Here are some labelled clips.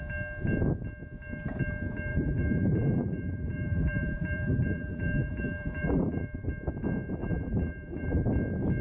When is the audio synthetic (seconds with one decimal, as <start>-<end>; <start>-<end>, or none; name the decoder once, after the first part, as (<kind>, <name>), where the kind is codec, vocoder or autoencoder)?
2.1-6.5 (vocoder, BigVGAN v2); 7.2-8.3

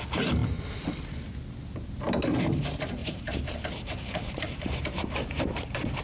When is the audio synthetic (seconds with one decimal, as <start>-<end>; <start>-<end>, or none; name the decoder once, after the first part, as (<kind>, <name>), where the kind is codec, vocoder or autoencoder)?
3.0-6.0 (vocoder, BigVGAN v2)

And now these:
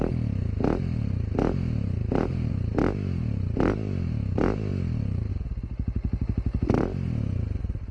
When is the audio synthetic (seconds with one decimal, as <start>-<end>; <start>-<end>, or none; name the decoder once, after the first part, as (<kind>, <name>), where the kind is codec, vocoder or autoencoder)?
2.0-2.5 (vocoder, BigVGAN v2)

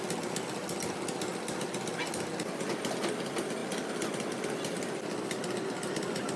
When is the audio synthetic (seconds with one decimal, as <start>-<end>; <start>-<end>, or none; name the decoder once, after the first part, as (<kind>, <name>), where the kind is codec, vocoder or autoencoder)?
none

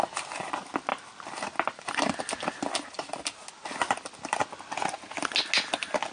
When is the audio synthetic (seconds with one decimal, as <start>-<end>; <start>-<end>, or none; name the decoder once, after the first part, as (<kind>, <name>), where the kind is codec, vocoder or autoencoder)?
none